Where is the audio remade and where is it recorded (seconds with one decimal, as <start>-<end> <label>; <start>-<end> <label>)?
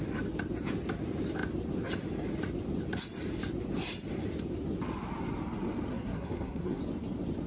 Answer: 0.0-5.9 recorded; 5.9-6.8 remade; 6.8-7.5 recorded